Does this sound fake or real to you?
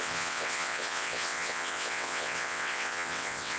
fake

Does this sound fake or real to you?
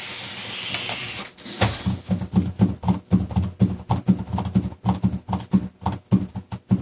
real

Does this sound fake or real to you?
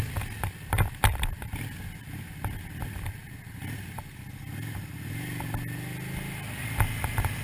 real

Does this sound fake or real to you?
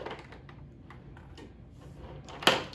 real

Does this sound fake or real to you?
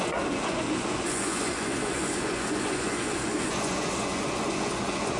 fake